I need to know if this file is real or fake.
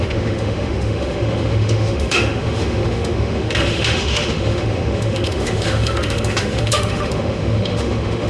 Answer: fake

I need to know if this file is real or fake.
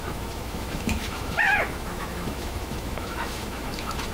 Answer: fake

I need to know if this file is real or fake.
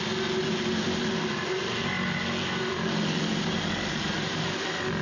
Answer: real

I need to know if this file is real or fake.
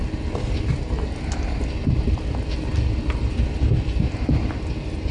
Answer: real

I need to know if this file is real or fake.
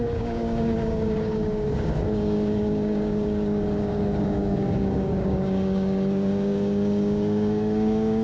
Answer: fake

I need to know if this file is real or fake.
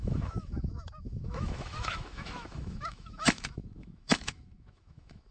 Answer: fake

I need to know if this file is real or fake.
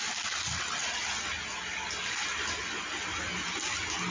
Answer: real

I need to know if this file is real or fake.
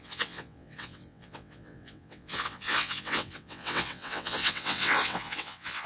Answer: fake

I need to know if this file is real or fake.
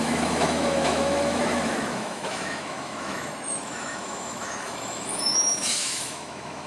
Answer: fake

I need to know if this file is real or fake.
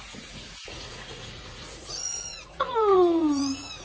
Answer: fake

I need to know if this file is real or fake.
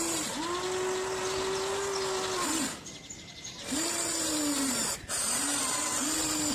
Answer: real